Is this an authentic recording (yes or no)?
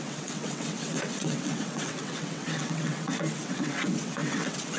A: no